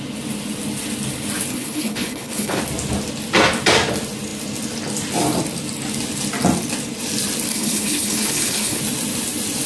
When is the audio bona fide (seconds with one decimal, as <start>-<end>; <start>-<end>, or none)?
0.0-1.5; 2.6-7.5; 8.8-9.7